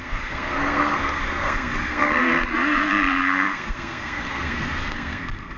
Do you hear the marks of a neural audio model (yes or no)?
yes